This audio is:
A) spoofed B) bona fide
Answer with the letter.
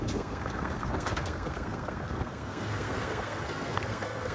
A